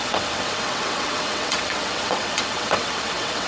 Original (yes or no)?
no